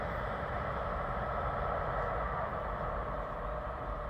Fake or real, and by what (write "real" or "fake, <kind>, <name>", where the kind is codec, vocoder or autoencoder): real